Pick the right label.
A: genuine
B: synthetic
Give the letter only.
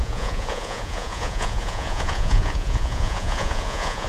B